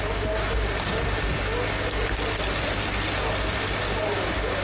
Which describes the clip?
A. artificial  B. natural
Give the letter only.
B